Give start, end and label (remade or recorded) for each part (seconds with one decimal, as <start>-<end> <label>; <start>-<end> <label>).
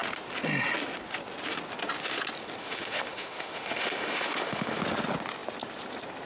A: 0.0-2.6 recorded; 2.6-4.8 remade; 4.8-6.3 recorded